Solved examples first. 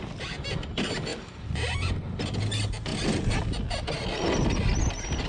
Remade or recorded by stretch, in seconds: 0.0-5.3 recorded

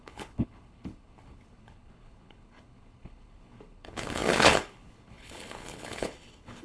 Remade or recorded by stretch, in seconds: 0.0-6.6 remade

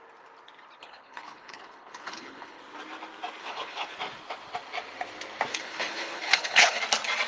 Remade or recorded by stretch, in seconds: 0.0-0.8 recorded; 0.8-2.6 remade; 2.6-3.4 recorded; 3.4-4.0 remade; 4.0-5.5 recorded; 5.5-6.8 remade; 6.8-7.3 recorded

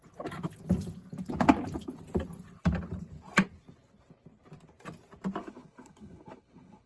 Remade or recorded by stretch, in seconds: 0.0-5.4 recorded; 5.4-6.9 remade